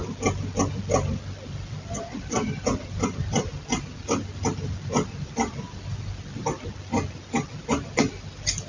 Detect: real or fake real